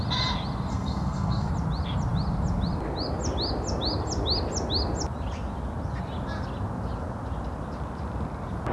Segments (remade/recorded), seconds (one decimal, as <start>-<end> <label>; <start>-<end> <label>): 0.0-0.7 recorded; 0.7-1.5 remade; 1.5-8.7 recorded